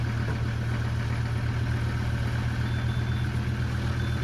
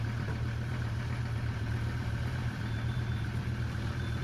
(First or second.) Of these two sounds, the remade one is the second